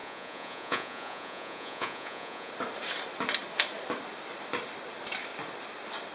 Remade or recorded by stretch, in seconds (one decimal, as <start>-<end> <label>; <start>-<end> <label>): 0.0-2.5 remade; 2.5-6.1 recorded